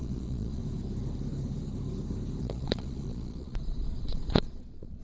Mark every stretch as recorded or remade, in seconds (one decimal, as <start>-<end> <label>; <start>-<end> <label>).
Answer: 0.0-0.6 remade; 0.6-2.4 recorded; 2.4-5.0 remade